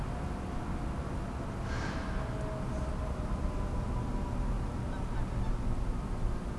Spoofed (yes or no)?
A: no